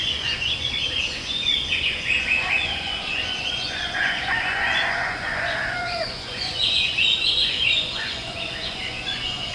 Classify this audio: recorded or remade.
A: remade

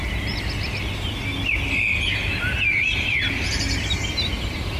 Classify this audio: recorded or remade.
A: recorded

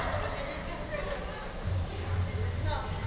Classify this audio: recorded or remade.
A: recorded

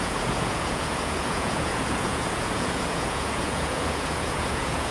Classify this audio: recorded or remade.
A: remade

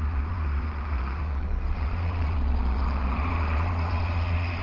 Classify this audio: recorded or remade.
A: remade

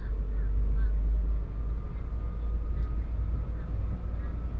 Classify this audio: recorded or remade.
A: recorded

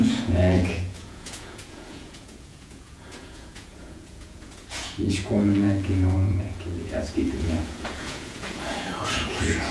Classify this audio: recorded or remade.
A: remade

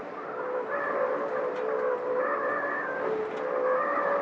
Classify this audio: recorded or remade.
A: recorded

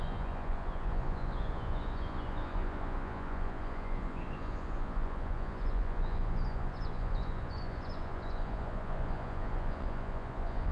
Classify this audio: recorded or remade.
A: remade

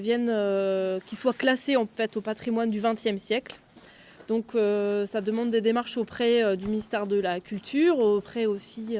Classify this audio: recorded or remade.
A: recorded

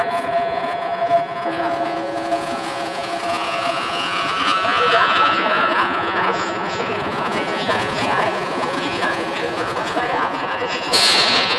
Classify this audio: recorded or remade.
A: remade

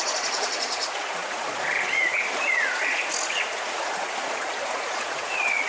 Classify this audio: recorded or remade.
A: remade